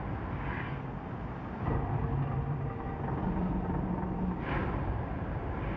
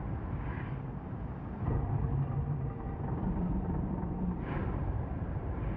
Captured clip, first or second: first